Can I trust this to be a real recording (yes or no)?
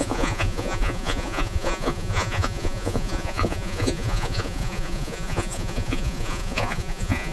no